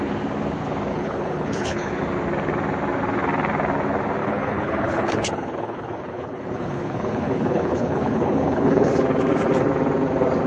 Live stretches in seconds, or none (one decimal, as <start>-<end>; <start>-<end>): 0.0-0.9; 1.9-4.2; 8.9-10.5